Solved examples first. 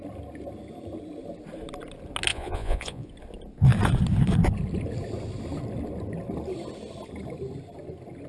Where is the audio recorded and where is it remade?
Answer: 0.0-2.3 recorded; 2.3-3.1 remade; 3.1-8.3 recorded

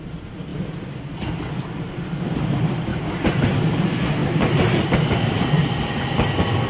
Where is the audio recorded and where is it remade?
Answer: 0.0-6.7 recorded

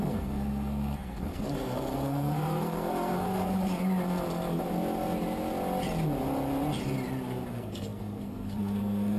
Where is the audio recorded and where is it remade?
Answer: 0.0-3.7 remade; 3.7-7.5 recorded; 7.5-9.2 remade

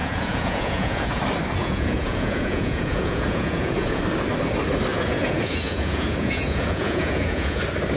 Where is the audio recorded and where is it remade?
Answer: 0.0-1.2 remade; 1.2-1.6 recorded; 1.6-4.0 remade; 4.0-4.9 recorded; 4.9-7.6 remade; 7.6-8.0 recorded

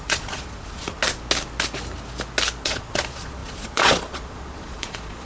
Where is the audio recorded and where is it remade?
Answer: 0.0-1.0 remade; 1.0-2.6 recorded; 2.6-5.3 remade

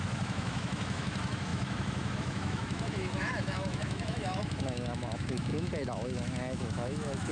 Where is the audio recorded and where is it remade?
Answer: 0.0-7.3 remade